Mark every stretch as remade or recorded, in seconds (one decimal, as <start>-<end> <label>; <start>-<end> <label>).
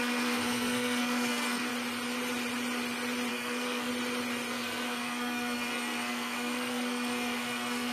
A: 0.0-1.7 remade; 1.7-3.3 recorded; 3.3-3.9 remade; 3.9-4.5 recorded; 4.5-7.9 remade